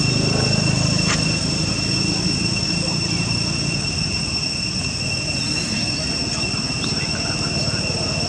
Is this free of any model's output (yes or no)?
yes